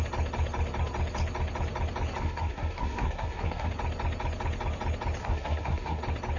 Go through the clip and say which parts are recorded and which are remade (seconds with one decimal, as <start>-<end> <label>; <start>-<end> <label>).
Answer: 0.0-2.2 recorded; 2.2-3.7 remade; 3.7-5.2 recorded; 5.2-6.0 remade; 6.0-6.4 recorded